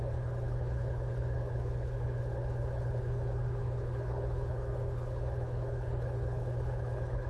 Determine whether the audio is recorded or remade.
remade